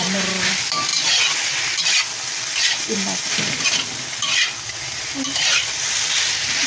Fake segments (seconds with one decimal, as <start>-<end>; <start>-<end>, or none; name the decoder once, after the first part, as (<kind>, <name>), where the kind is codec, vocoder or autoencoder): 0.0-0.9 (vocoder, BigVGAN v2); 4.8-6.7